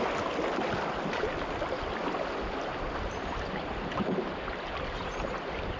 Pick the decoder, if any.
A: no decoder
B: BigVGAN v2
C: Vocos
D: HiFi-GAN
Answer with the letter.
A